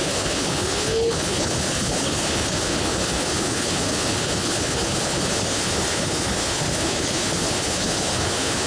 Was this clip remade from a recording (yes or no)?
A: yes